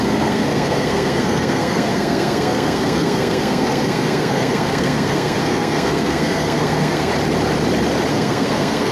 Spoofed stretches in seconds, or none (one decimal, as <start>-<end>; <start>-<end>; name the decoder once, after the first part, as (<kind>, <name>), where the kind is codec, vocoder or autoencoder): 0.0-7.1 (codec, SNAC); 8.1-8.9